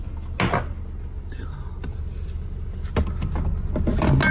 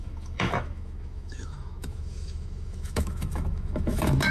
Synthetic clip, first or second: second